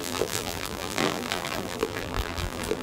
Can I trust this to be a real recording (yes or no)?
no